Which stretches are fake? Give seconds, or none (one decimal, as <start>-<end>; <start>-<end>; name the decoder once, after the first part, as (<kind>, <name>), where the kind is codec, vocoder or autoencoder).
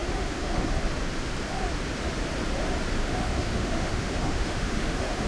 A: 0.0-0.7 (autoencoder, DAC-VAE); 3.0-5.3